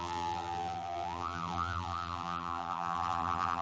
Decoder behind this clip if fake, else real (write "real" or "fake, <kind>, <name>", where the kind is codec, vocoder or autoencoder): fake, vocoder, BigVGAN v2